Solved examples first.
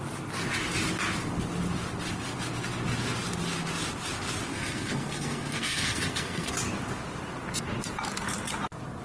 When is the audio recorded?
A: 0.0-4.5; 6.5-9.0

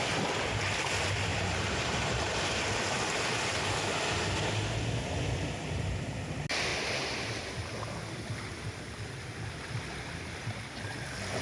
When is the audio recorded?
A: 0.0-1.3; 2.5-11.4